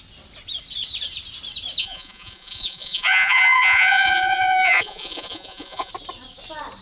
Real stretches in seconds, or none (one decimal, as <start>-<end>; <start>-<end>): 0.0-1.8; 5.9-6.8